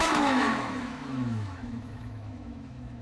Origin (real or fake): fake